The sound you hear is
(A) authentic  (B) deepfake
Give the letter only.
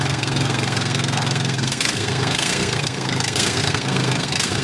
B